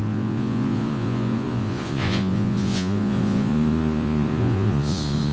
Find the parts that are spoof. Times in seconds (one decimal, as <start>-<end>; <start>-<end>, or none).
0.0-5.3